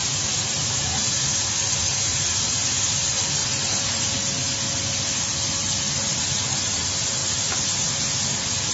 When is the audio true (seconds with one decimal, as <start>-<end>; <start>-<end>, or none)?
0.0-8.7